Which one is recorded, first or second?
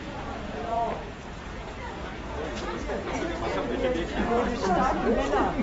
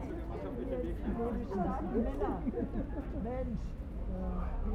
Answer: second